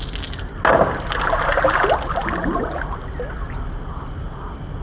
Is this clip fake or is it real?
real